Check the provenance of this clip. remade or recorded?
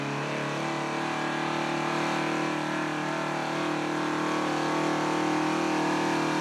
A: recorded